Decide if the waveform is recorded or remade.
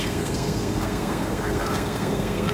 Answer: remade